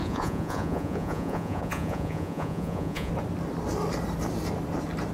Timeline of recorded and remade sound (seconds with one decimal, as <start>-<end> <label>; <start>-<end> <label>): 0.0-3.1 remade; 3.1-5.1 recorded